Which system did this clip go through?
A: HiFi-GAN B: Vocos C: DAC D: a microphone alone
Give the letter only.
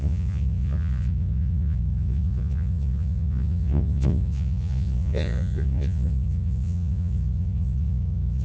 B